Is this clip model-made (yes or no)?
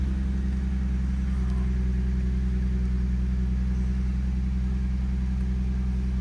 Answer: no